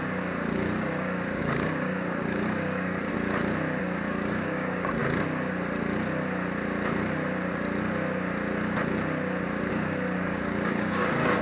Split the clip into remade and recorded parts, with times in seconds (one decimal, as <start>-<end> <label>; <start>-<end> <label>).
0.0-3.1 remade; 3.1-3.8 recorded; 3.8-5.0 remade; 5.0-9.7 recorded; 9.7-11.4 remade

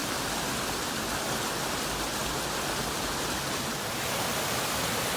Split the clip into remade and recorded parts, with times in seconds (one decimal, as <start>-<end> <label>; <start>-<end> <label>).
0.0-5.2 recorded

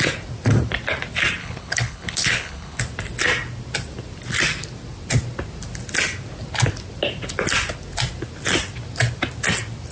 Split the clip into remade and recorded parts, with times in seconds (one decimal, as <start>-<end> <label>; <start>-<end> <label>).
0.0-1.4 recorded; 1.4-2.8 remade; 2.8-9.9 recorded

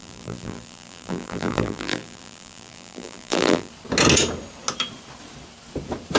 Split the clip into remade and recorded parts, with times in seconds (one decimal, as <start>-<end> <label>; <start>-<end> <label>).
0.0-3.7 remade; 3.7-6.2 recorded

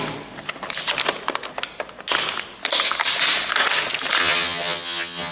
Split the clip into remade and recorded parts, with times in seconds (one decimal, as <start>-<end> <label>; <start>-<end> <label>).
0.0-4.2 recorded; 4.2-5.3 remade

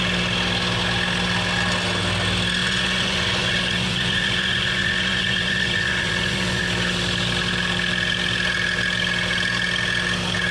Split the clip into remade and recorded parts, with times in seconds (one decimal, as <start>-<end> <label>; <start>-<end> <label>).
0.0-2.6 recorded; 2.6-6.6 remade; 6.6-10.5 recorded

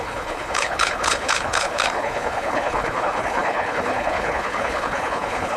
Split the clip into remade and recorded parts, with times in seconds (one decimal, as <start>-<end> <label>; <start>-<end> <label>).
0.0-5.6 remade

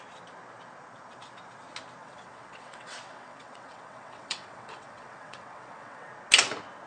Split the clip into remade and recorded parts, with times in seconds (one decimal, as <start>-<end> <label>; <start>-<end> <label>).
0.0-2.0 recorded; 2.0-6.1 remade; 6.1-6.9 recorded